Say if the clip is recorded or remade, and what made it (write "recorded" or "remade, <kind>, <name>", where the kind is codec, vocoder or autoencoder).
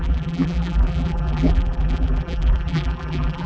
remade, vocoder, BigVGAN v2